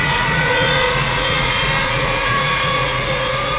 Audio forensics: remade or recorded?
remade